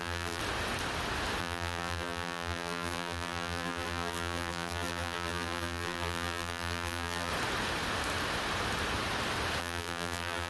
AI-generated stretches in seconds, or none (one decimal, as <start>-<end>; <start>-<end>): 0.0-0.4; 1.4-7.3; 9.6-10.5